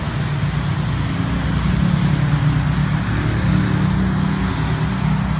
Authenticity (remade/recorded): recorded